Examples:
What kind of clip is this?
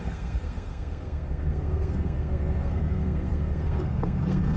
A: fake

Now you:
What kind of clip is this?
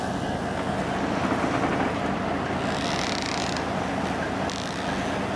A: real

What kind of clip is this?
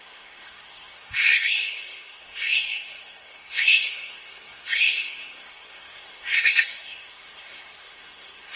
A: fake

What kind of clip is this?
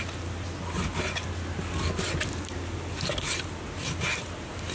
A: real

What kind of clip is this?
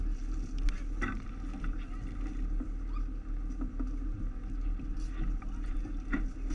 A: real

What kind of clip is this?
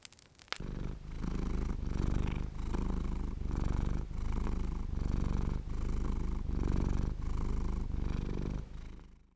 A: real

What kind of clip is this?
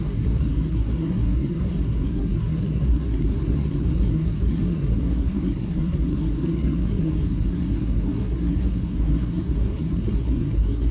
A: fake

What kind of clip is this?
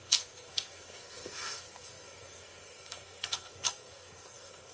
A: fake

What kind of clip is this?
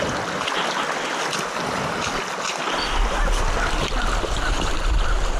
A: real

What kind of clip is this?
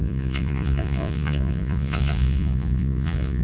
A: fake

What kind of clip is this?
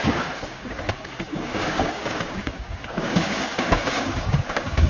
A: fake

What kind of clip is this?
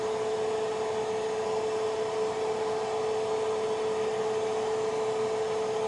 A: real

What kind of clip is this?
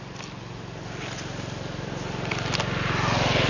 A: real